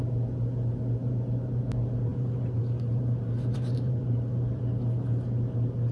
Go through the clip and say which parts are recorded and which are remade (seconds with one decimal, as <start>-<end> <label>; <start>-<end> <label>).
0.0-1.0 recorded; 1.0-1.6 remade; 1.6-2.1 recorded; 2.1-4.6 remade; 4.6-5.9 recorded